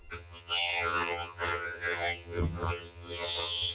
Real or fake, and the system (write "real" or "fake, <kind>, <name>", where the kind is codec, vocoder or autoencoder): fake, vocoder, HiFi-GAN